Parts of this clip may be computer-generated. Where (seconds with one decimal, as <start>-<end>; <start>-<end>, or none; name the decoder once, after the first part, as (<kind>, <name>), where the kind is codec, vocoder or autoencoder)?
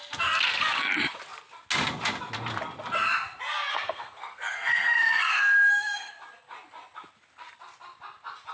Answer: 3.7-6.1 (codec, SNAC)